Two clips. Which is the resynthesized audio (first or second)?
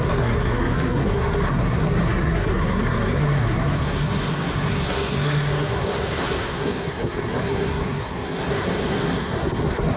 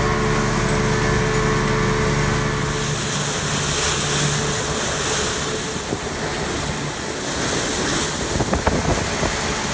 first